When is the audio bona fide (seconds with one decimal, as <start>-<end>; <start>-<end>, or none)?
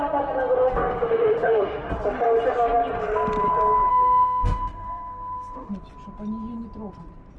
0.0-0.7; 1.9-3.9; 5.7-7.4